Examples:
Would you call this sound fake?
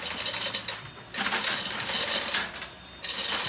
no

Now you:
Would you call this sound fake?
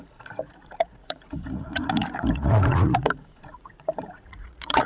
yes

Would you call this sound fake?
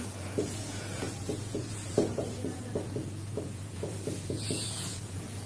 yes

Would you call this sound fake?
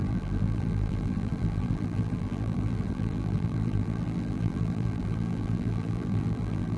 yes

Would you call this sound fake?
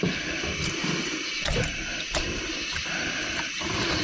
no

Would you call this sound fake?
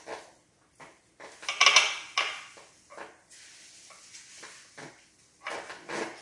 no